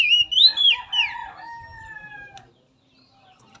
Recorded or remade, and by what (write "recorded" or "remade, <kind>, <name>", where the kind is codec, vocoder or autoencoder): recorded